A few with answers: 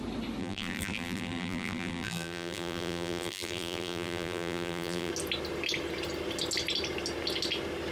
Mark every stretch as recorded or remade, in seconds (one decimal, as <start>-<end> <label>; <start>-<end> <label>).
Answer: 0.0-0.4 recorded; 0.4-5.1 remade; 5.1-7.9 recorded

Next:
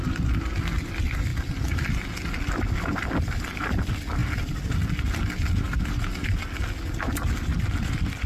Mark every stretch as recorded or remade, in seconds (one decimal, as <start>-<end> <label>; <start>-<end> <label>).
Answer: 0.0-8.3 recorded

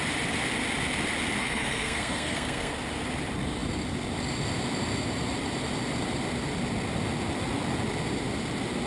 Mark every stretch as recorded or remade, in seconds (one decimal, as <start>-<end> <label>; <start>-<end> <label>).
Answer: 0.0-1.4 recorded; 1.4-2.7 remade; 2.7-8.9 recorded

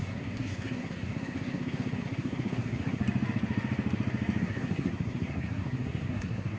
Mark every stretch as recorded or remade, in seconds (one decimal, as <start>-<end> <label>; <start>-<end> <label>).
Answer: 0.0-3.0 remade; 3.0-4.4 recorded; 4.4-6.6 remade

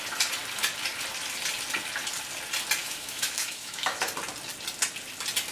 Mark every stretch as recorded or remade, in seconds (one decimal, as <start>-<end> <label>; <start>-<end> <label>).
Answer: 0.0-2.8 recorded; 2.8-4.1 remade; 4.1-5.5 recorded

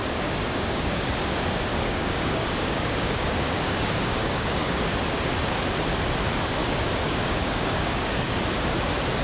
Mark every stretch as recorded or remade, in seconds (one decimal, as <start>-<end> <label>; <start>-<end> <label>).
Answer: 0.0-1.1 remade; 1.1-1.7 recorded; 1.7-4.8 remade; 4.8-6.6 recorded; 6.6-8.3 remade; 8.3-9.2 recorded